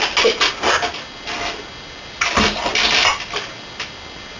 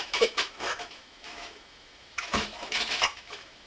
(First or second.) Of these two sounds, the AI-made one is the second